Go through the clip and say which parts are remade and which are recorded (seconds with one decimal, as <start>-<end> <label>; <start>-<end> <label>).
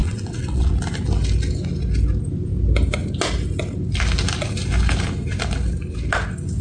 0.0-0.7 remade; 0.7-6.6 recorded